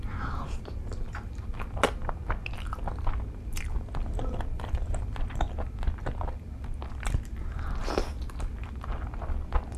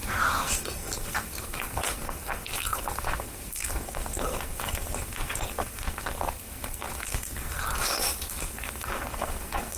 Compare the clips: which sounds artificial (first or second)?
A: second